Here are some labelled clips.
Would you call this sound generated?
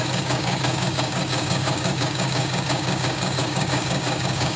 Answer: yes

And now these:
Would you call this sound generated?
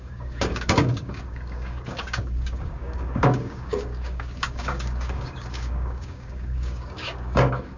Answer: yes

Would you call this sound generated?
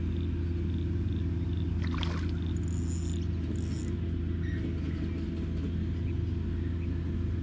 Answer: no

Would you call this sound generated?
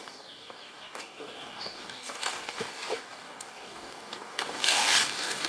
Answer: yes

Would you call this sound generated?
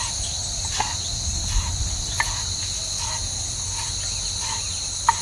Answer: no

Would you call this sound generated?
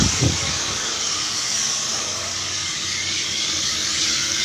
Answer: yes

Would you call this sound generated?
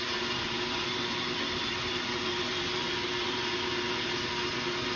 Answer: no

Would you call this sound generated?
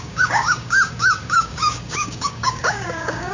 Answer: yes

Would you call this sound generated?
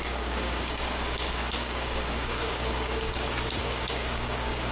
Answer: yes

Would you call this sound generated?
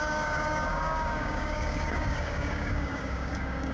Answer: yes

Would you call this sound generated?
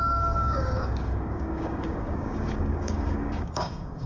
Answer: yes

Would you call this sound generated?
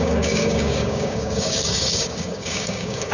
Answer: yes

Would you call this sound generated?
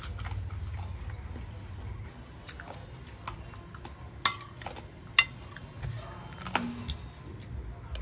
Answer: no